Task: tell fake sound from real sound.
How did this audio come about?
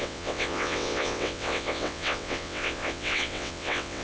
fake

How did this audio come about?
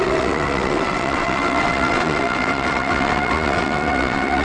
fake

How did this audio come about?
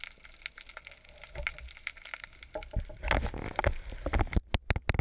real